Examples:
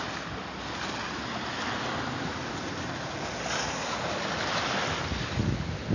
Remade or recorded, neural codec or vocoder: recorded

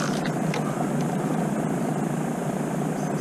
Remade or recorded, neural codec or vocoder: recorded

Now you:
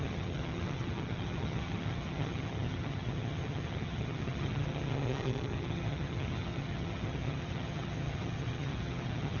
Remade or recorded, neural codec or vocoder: remade, vocoder, HiFi-GAN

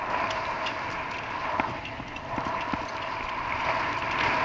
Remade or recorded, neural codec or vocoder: recorded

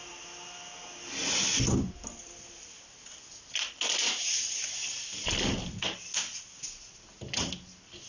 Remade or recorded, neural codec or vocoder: recorded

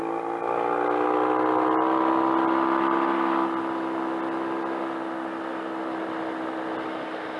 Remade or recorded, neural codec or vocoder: recorded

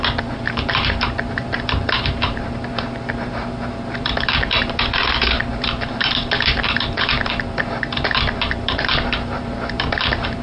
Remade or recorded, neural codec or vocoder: remade, vocoder, BigVGAN v2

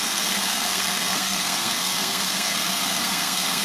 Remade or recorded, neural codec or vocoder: remade, codec, SNAC